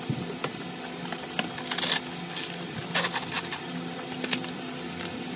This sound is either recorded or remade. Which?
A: recorded